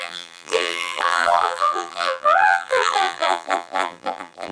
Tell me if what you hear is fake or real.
fake